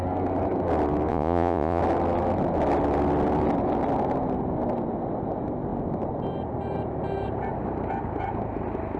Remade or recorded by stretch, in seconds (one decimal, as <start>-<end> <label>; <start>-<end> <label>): 0.0-1.1 recorded; 1.1-1.8 remade; 1.8-9.0 recorded

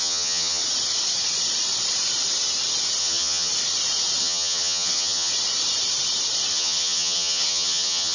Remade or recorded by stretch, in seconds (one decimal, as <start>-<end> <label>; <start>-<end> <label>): 0.0-0.6 remade; 0.6-3.0 recorded; 3.0-3.5 remade; 3.5-4.2 recorded; 4.2-5.3 remade; 5.3-6.5 recorded; 6.5-8.1 remade

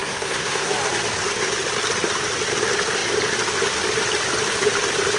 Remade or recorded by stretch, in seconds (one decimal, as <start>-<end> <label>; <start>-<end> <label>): 0.0-0.7 remade; 0.7-5.2 recorded

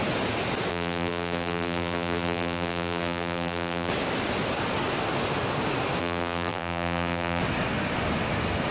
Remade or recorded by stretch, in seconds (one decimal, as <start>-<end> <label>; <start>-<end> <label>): 0.0-0.7 recorded; 0.7-3.9 remade; 3.9-6.0 recorded; 6.0-7.4 remade; 7.4-8.7 recorded